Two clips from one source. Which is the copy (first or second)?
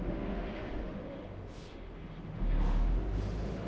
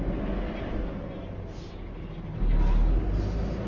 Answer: first